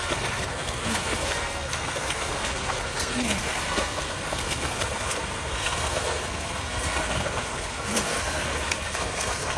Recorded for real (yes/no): no